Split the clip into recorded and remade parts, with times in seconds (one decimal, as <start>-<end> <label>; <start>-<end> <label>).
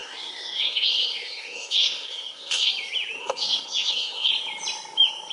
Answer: 0.0-2.7 remade; 2.7-3.2 recorded; 3.2-4.3 remade; 4.3-5.3 recorded